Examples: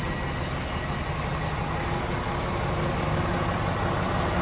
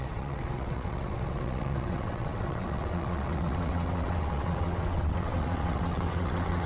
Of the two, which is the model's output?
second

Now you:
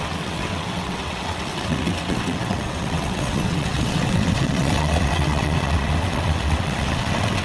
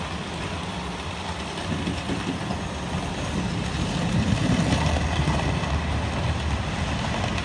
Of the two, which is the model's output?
first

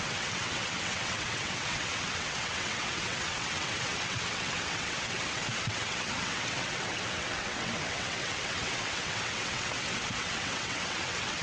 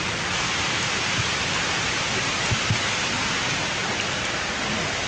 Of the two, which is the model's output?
first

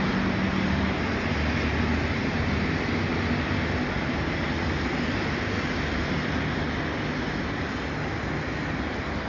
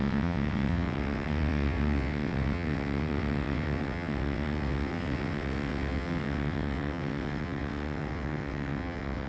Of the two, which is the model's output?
second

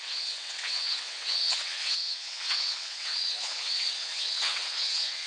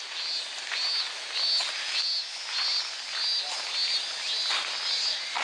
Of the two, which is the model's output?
first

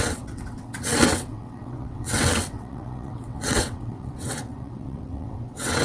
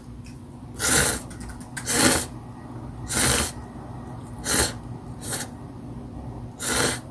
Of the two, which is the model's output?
first